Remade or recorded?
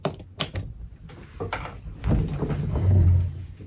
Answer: recorded